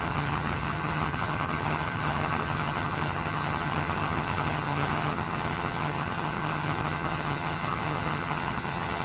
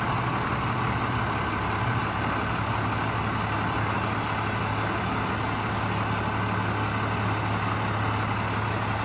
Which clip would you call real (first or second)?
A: second